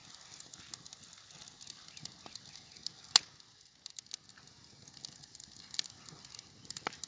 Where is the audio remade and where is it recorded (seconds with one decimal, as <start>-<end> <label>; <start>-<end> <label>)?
0.0-7.1 recorded